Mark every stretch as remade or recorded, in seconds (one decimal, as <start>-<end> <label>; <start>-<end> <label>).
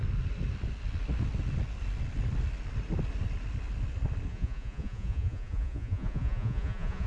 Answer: 0.0-4.3 recorded; 4.3-7.1 remade